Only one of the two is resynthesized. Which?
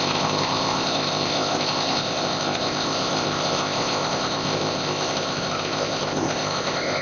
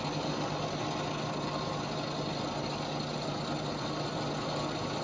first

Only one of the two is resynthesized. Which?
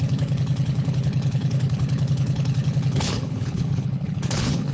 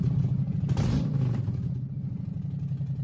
first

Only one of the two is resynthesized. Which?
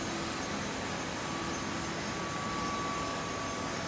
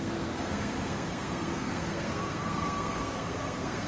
second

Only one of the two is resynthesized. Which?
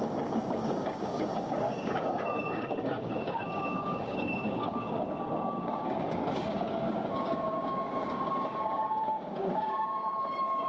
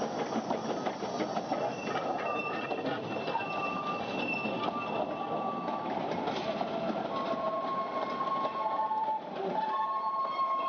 first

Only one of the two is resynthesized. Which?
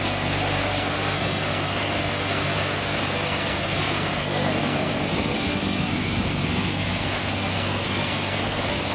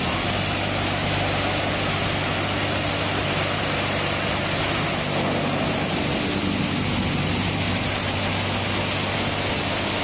first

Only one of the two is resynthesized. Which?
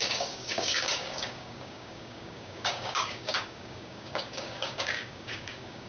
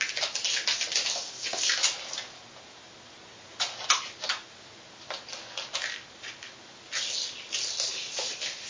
first